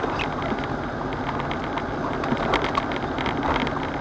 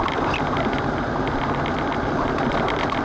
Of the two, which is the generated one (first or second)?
second